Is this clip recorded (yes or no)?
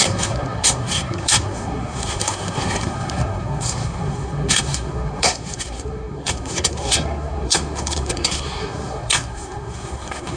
no